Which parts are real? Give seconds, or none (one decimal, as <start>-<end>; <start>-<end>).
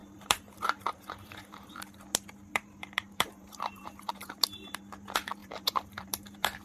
1.7-2.5; 4.8-5.4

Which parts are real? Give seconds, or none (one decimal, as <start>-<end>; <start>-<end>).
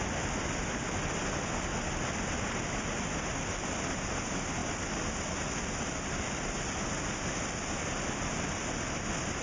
0.0-9.4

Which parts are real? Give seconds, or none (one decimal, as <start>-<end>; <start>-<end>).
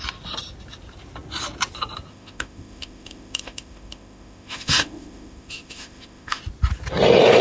0.0-2.1; 6.4-7.4